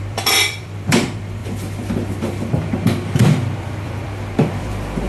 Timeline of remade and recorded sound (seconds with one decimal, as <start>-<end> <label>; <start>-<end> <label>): 0.0-5.1 remade